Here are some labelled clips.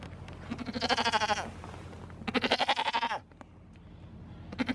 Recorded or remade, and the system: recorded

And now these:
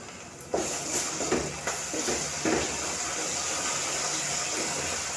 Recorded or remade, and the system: recorded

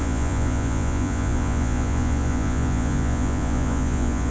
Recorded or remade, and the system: remade, vocoder, Vocos